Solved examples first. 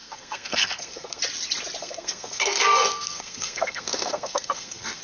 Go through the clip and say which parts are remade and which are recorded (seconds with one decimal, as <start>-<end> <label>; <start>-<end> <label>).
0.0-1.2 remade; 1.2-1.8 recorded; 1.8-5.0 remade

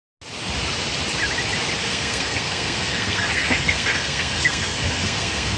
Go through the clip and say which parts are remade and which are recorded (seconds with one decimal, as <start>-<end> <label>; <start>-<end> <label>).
0.0-1.8 recorded; 1.8-5.6 remade

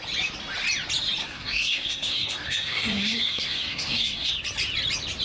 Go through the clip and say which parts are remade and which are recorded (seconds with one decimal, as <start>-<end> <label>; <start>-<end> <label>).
0.0-1.2 recorded; 1.2-4.3 remade; 4.3-5.2 recorded